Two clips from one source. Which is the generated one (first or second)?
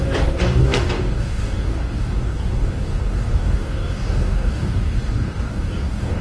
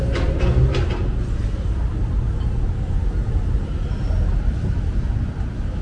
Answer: first